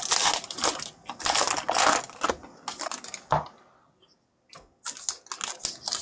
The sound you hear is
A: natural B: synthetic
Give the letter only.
A